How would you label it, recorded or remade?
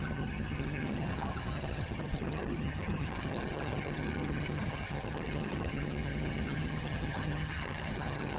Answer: remade